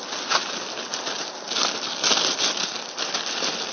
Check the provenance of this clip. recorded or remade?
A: recorded